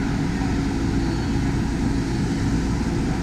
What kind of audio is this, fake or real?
real